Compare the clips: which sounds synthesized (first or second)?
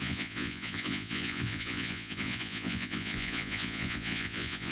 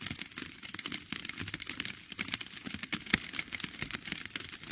first